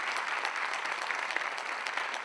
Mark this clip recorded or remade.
recorded